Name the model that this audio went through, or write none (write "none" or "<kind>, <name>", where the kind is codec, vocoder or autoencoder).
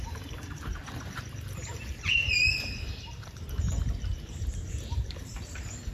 vocoder, BigVGAN v2